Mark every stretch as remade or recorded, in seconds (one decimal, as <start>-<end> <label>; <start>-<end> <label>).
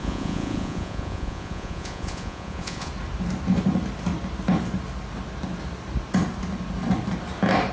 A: 0.0-2.9 remade; 2.9-7.7 recorded